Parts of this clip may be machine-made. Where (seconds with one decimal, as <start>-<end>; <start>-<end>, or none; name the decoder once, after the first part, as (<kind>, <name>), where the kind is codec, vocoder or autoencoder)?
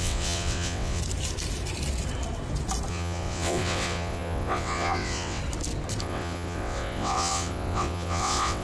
0.0-1.0 (vocoder, WaveNeXt); 2.9-5.4; 6.0-8.6